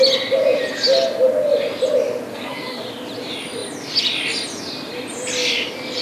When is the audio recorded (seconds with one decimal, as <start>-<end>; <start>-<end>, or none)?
0.0-2.3; 2.8-6.0